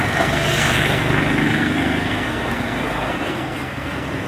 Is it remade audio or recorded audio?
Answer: remade